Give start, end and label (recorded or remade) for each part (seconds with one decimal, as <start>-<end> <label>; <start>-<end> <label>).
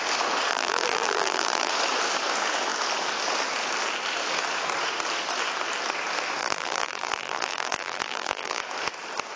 0.0-0.5 recorded; 0.5-1.7 remade; 1.7-6.4 recorded; 6.4-8.6 remade; 8.6-9.4 recorded